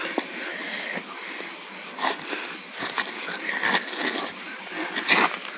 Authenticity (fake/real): real